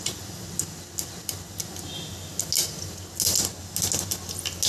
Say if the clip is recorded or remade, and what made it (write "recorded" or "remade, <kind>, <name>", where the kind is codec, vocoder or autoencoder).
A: recorded